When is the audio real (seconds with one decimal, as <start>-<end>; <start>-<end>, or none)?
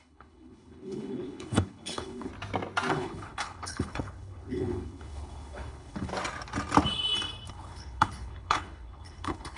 2.3-2.9; 6.1-7.5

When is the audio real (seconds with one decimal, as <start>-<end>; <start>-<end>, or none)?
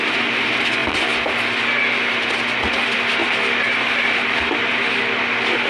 0.0-5.7